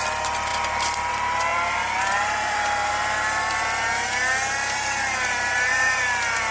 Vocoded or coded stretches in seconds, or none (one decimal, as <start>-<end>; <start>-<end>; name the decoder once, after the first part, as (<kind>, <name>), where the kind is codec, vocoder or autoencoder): 1.5-2.9 (vocoder, BigVGAN v2); 4.6-6.0